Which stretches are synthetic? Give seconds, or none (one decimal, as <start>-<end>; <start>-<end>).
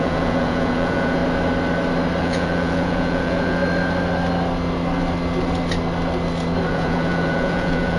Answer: 0.0-1.2; 2.2-3.6; 6.7-8.0